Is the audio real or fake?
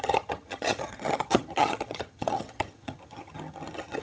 fake